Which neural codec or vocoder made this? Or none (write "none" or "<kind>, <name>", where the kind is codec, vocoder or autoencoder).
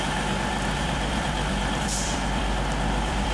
vocoder, BigVGAN v2